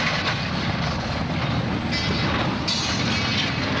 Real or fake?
real